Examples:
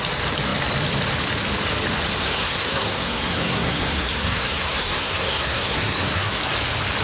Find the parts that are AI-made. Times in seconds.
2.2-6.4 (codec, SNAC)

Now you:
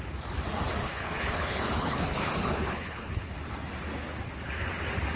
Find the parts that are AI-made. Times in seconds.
0.8-3.2 (codec, HILCodec)

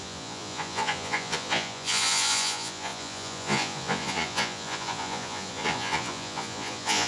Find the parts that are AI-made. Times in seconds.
0.0-7.1 (vocoder, Vocos)